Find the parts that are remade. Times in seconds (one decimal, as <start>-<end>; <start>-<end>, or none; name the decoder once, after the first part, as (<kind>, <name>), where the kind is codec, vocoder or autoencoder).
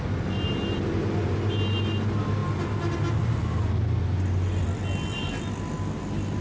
none